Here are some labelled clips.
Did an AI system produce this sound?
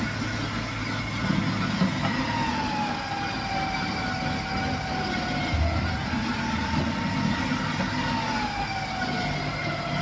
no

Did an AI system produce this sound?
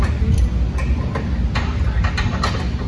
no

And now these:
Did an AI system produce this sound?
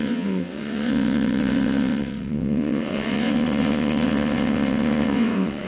yes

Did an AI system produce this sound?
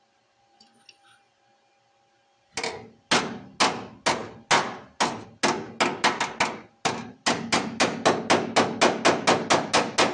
no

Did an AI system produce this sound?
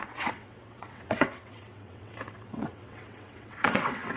yes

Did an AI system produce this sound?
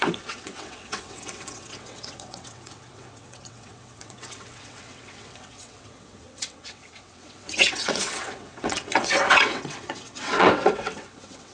yes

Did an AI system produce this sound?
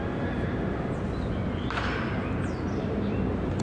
no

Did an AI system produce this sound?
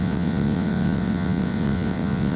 yes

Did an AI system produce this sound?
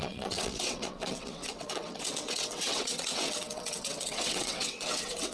yes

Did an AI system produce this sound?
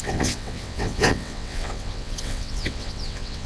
yes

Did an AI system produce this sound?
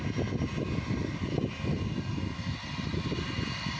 no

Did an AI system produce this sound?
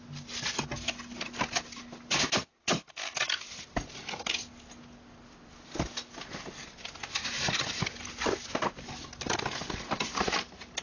no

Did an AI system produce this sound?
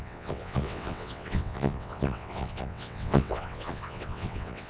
yes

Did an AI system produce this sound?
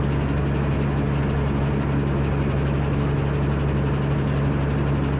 no